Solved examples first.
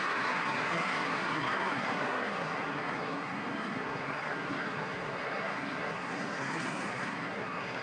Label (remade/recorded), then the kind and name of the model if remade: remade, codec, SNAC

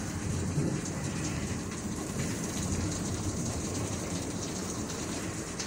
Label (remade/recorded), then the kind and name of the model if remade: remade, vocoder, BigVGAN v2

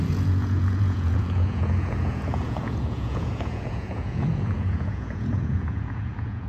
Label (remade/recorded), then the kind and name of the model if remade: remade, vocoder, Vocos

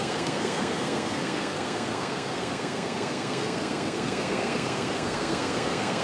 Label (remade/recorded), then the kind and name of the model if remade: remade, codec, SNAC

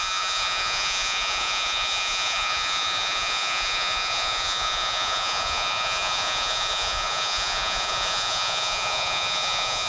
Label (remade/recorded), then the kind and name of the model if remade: remade, vocoder, Vocos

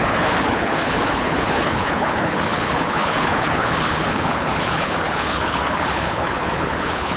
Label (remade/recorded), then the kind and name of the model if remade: remade, codec, HILCodec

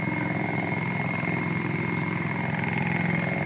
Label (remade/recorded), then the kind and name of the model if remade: recorded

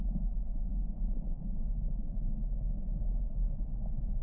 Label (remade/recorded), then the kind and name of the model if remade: recorded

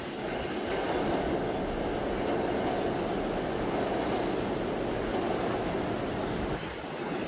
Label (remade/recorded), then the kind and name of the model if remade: recorded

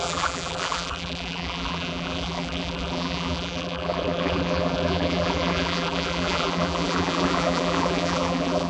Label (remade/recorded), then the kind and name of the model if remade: remade, vocoder, BigVGAN v2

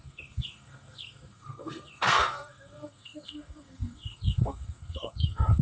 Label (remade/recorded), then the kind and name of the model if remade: remade, codec, SNAC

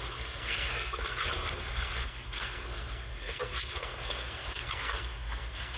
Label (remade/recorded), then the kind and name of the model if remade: remade, codec, SNAC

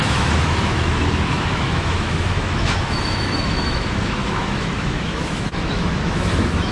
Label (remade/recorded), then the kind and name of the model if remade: remade, autoencoder, DAC-VAE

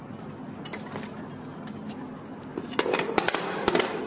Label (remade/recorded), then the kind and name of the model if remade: recorded